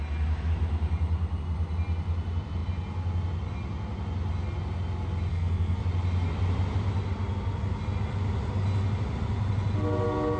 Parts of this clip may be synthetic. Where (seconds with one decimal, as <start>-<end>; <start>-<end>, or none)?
5.3-5.8